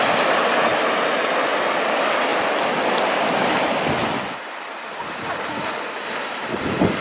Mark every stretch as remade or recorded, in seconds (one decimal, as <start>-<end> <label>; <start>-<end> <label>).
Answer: 0.0-7.0 recorded